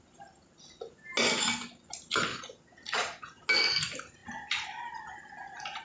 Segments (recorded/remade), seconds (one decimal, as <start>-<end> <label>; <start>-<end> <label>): 0.0-2.3 recorded; 2.3-3.4 remade; 3.4-5.8 recorded

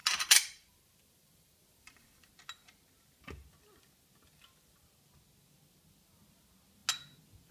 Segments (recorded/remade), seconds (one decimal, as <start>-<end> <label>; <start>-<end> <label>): 0.0-2.3 remade; 2.3-7.5 recorded

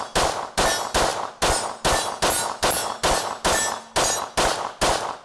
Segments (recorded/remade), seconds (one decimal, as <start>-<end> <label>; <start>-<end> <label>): 0.0-5.2 recorded

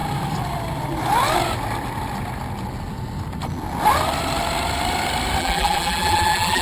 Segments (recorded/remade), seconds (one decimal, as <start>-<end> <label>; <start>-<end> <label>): 0.0-5.4 recorded; 5.4-6.6 remade

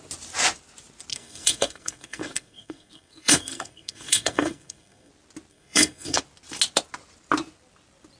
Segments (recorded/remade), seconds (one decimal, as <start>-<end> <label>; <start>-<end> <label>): 0.0-1.1 recorded; 1.1-5.1 remade; 5.1-5.5 recorded; 5.5-6.2 remade; 6.2-8.2 recorded

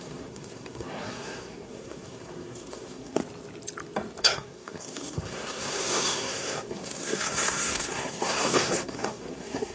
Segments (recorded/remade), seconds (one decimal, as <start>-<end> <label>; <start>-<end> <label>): 0.0-3.2 remade; 3.2-4.2 recorded; 4.2-9.7 remade